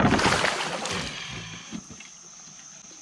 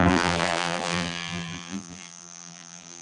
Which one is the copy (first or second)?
second